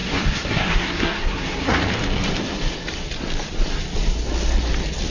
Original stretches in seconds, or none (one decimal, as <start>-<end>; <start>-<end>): 1.8-5.1